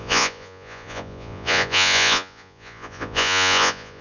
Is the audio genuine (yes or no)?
no